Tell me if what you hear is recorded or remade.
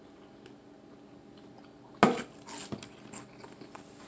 recorded